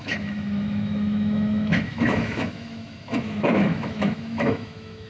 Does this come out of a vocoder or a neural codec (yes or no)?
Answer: yes